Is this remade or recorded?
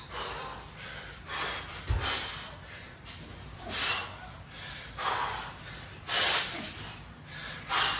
recorded